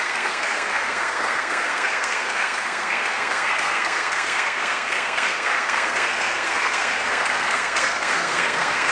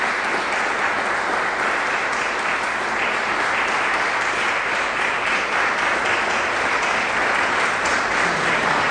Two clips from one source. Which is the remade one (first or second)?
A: first